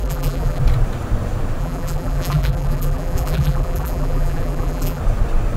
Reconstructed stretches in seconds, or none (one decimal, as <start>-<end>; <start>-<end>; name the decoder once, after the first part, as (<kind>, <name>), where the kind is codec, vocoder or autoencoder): 0.0-0.6 (vocoder, BigVGAN v2); 1.6-5.0